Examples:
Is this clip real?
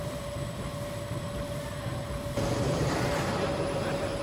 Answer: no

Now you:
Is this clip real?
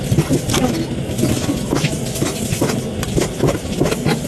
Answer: yes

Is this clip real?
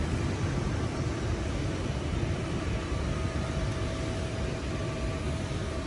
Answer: yes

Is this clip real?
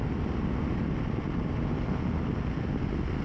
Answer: yes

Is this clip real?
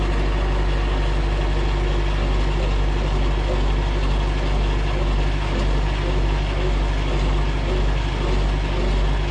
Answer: yes